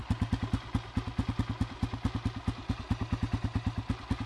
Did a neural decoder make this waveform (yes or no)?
no